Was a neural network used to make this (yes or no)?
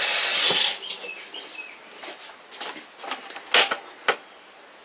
no